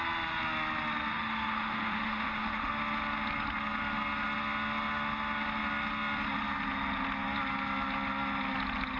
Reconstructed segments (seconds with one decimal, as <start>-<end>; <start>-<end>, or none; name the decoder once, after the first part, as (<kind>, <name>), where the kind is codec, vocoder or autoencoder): 1.1-2.7 (autoencoder, DAC-VAE)